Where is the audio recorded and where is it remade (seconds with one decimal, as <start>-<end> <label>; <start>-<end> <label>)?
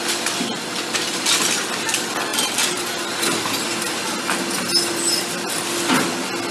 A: 0.0-6.5 recorded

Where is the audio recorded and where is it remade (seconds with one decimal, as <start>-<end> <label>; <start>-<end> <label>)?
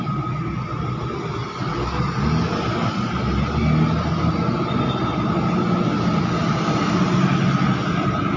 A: 0.0-8.4 recorded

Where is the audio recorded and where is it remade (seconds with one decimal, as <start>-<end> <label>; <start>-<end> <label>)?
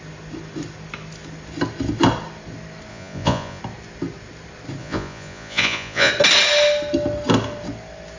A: 0.0-2.9 recorded; 2.9-3.6 remade; 3.6-4.8 recorded; 4.8-6.1 remade; 6.1-8.2 recorded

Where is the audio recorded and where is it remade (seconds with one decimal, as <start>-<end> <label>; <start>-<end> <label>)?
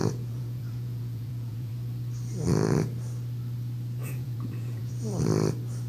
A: 0.0-1.7 remade; 1.7-4.0 recorded; 4.0-4.9 remade; 4.9-5.9 recorded